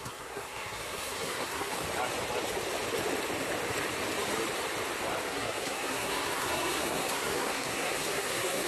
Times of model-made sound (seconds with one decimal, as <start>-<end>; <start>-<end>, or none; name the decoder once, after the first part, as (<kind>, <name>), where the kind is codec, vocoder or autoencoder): 0.0-1.7 (codec, SNAC); 5.3-8.7